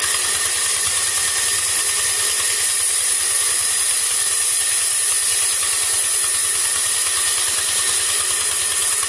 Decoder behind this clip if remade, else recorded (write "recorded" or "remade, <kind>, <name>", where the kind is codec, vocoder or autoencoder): recorded